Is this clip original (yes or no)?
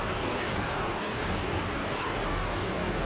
no